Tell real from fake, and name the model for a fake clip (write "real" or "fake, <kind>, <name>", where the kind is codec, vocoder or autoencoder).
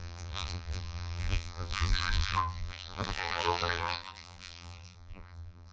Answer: fake, vocoder, BigVGAN v2